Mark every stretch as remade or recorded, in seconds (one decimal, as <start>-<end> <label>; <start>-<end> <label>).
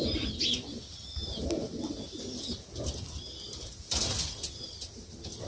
0.0-5.5 recorded